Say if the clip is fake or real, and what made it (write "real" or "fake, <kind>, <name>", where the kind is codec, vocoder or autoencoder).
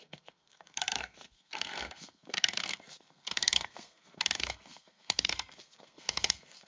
fake, codec, SNAC